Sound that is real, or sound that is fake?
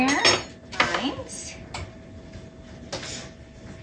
real